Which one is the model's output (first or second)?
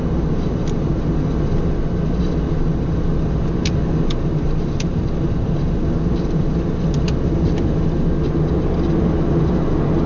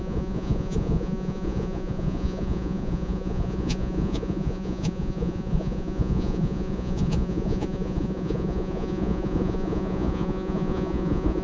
second